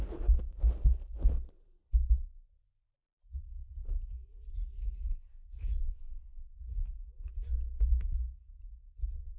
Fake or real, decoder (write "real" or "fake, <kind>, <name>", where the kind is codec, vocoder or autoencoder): real